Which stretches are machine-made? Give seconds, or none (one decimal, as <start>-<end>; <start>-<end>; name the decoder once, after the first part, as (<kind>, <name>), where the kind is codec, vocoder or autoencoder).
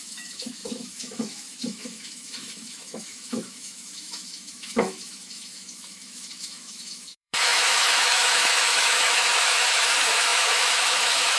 0.0-11.4 (autoencoder, DAC-VAE)